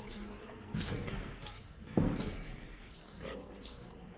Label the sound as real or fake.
fake